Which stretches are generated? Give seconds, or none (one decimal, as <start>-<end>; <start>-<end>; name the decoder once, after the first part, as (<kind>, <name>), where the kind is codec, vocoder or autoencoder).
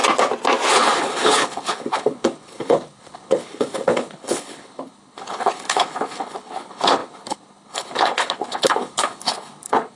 0.7-10.0 (codec, HILCodec)